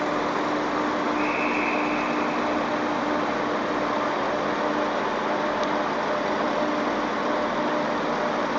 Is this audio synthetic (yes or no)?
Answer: no